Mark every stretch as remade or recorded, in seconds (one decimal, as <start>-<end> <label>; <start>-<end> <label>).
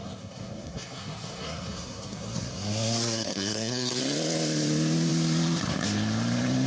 0.0-4.0 remade; 4.0-6.7 recorded